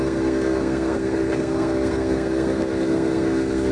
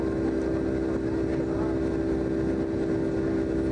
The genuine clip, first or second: second